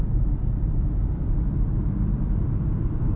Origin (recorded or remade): remade